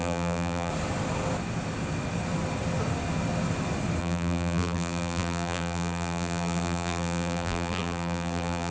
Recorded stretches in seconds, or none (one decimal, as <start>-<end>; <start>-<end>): 0.7-4.0